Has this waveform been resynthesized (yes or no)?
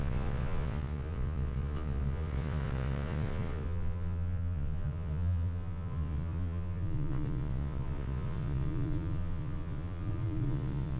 yes